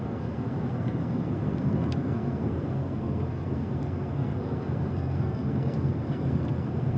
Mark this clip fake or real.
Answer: fake